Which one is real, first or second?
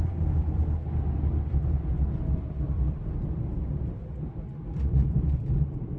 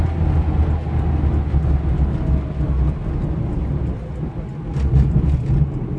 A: second